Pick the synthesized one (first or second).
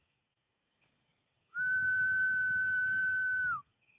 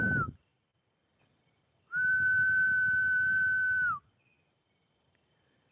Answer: first